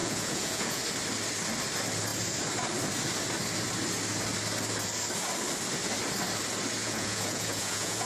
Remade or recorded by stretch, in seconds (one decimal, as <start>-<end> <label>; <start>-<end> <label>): 0.0-0.8 remade; 0.8-6.8 recorded; 6.8-8.1 remade